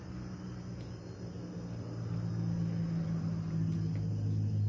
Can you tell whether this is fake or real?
real